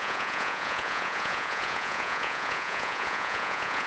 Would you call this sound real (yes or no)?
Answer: no